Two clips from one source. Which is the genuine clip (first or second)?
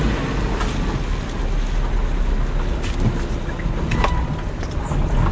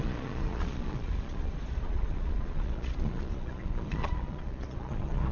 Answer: first